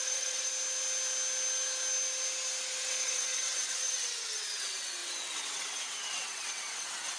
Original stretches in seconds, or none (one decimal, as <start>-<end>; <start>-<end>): 0.5-2.8